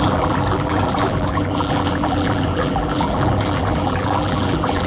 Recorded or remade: remade